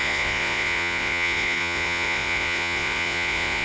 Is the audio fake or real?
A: fake